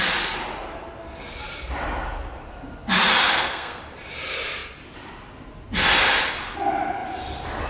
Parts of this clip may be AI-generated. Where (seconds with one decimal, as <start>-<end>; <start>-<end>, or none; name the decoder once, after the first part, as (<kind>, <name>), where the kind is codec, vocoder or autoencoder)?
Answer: 3.2-3.8 (codec, SNAC)